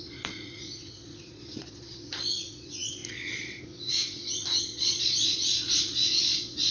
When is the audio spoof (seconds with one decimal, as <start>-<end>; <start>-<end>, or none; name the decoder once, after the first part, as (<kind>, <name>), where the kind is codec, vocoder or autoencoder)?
0.0-6.7 (vocoder, Vocos)